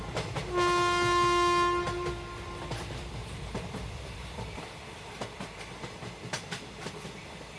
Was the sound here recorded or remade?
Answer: recorded